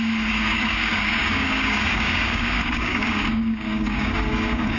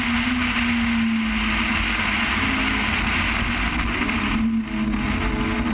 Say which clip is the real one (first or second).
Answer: second